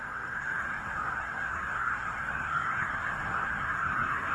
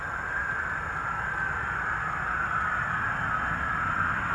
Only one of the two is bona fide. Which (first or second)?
second